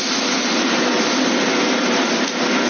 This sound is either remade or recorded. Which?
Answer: recorded